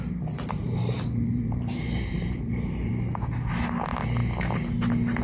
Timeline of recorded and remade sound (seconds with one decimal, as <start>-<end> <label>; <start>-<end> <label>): 0.0-0.6 recorded; 0.6-2.9 remade; 2.9-5.2 recorded